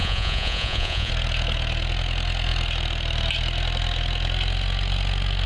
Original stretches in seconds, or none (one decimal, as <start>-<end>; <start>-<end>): 1.1-5.5